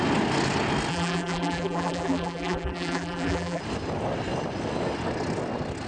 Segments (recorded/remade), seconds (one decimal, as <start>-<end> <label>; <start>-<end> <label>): 0.0-0.9 recorded; 0.9-3.6 remade; 3.6-5.9 recorded